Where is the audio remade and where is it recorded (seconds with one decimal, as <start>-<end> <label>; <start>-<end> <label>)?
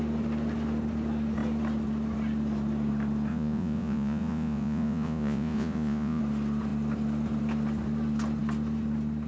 0.0-3.3 recorded; 3.3-6.2 remade; 6.2-9.3 recorded